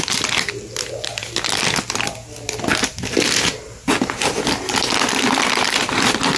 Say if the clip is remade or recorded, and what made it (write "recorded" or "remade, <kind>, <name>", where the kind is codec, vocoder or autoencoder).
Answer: recorded